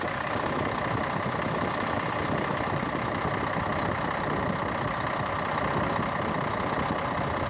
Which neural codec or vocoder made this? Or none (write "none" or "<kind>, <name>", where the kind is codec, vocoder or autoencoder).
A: none